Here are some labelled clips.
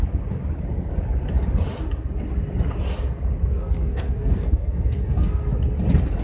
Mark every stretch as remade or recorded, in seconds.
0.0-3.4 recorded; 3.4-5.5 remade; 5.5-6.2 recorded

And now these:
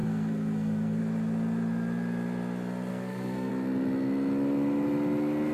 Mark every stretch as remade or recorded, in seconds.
0.0-1.0 remade; 1.0-2.9 recorded; 2.9-3.5 remade; 3.5-5.5 recorded

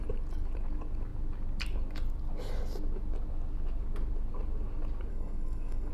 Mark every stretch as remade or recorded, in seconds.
0.0-5.1 recorded; 5.1-5.9 remade

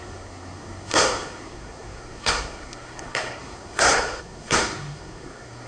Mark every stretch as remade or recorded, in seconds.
0.0-5.7 remade